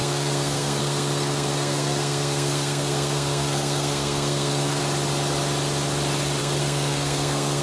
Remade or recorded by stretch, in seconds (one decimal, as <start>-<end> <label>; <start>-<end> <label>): 0.0-4.8 remade; 4.8-6.4 recorded; 6.4-7.6 remade